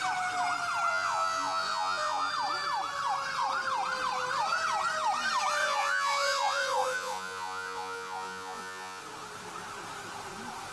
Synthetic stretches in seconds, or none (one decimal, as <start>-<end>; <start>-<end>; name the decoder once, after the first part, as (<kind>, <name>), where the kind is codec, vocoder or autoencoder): 0.9-2.3 (vocoder, Vocos); 5.6-9.0